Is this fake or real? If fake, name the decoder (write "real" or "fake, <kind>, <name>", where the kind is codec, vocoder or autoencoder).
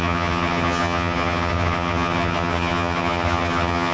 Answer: fake, vocoder, HiFi-GAN